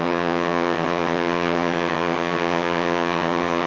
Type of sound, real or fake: fake